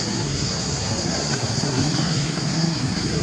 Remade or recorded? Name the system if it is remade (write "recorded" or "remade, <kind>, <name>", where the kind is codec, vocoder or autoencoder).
remade, codec, SNAC